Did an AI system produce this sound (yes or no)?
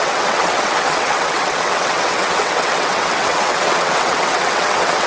yes